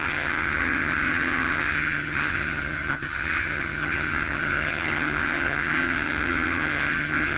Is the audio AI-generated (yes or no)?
yes